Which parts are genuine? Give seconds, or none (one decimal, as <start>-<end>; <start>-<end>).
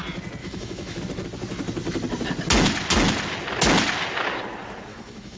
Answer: 0.0-0.4; 1.0-4.9